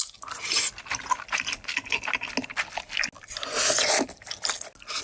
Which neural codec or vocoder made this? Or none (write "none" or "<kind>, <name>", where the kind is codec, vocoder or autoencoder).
none